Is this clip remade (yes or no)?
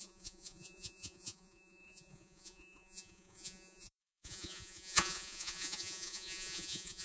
yes